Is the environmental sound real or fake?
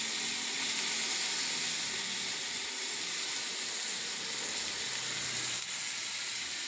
real